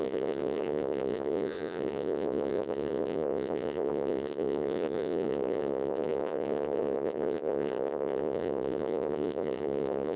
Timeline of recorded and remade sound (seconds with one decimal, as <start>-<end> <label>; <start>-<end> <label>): 0.0-10.2 remade